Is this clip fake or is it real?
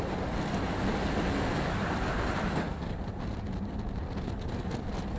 real